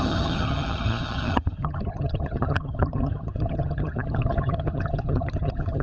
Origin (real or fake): fake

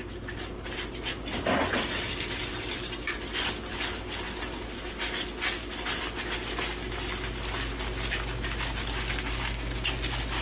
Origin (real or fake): real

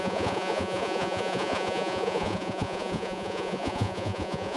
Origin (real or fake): fake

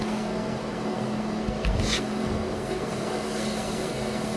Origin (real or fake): fake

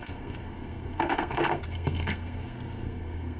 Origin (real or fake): fake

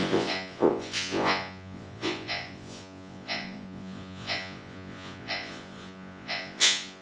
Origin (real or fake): fake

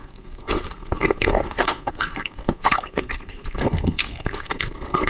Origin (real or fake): fake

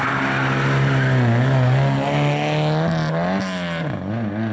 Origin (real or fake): real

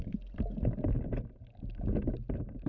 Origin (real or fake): real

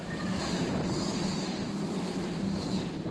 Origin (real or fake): real